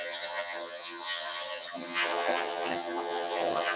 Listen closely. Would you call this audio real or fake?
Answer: fake